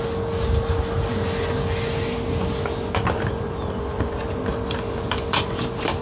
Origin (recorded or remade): recorded